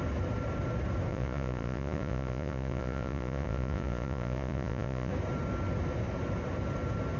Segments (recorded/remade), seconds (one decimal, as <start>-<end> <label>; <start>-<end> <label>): 0.0-1.1 recorded; 1.1-5.1 remade; 5.1-7.2 recorded